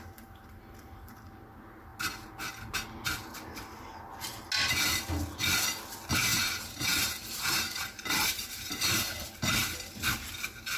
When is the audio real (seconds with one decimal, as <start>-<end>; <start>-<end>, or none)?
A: 0.0-6.3; 8.7-10.8